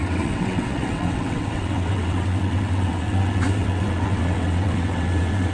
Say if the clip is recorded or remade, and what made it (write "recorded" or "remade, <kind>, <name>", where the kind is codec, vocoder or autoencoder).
remade, vocoder, WaveNeXt